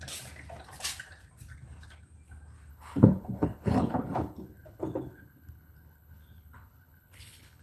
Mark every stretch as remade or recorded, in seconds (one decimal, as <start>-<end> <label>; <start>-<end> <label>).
0.0-2.7 recorded; 2.7-7.6 remade